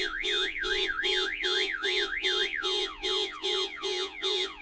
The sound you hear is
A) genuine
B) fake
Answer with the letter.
B